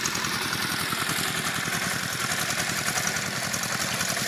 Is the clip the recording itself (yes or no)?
yes